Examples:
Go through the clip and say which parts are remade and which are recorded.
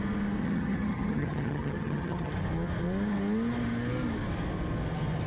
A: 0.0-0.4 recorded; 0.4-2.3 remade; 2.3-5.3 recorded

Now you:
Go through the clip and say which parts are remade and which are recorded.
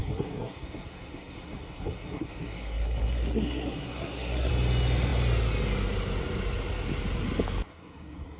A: 0.0-4.5 remade; 4.5-7.7 recorded; 7.7-8.4 remade